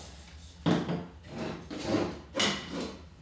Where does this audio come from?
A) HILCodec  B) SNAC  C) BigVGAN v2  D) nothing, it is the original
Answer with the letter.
D